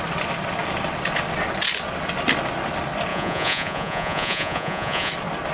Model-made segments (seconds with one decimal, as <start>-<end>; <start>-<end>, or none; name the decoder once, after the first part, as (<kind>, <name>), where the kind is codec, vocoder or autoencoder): 3.1-5.1 (vocoder, Vocos)